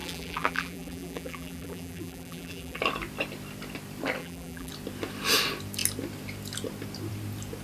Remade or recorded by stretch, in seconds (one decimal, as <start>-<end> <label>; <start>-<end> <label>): 0.0-2.8 remade; 2.8-4.2 recorded; 4.2-4.7 remade; 4.7-7.6 recorded